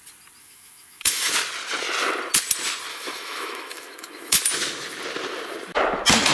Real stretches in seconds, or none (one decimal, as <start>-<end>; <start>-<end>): 0.0-0.4; 1.3-2.9; 4.4-6.3